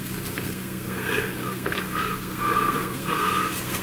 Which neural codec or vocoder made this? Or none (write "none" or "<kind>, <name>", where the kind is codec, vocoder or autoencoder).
codec, SNAC